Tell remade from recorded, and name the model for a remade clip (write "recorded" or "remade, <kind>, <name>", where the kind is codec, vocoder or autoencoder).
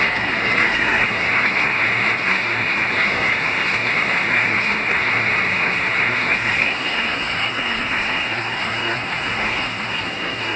remade, codec, SNAC